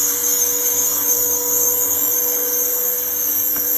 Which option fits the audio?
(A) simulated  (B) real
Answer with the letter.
A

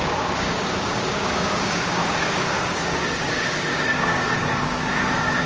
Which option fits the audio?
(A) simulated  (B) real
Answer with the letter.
A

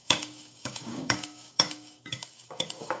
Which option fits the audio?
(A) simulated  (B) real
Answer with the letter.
A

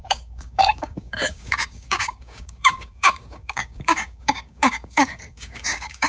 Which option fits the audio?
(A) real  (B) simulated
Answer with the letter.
B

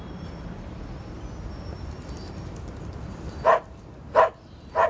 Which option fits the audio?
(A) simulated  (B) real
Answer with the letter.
B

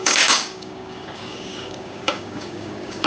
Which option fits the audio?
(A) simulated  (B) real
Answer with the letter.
A